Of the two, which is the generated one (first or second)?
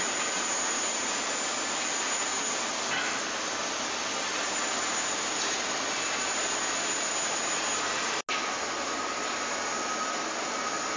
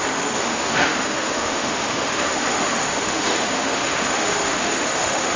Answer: second